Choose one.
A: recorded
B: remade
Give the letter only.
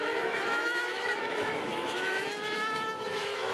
B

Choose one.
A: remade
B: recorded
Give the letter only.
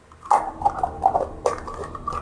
B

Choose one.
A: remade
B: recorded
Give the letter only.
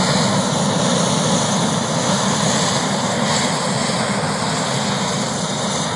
B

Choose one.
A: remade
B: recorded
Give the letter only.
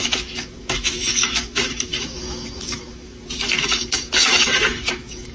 A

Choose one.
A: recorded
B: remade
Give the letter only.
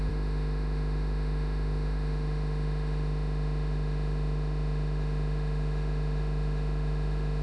B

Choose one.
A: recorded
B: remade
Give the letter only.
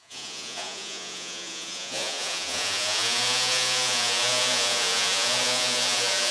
B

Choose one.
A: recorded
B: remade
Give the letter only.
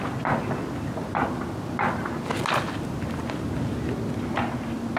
A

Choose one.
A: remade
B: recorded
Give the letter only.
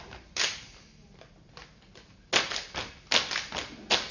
B